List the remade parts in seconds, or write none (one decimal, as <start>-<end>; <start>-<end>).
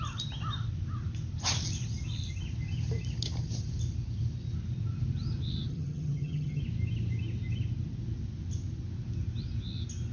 5.7-6.6